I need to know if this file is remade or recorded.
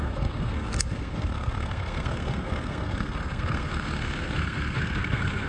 remade